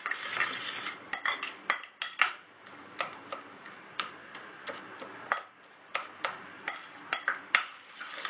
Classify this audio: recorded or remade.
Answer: recorded